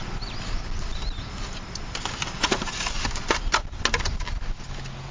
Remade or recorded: recorded